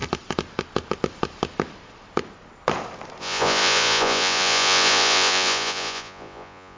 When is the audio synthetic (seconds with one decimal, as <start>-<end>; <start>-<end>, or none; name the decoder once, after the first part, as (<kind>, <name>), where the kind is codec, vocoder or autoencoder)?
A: 3.2-6.8 (vocoder, Vocos)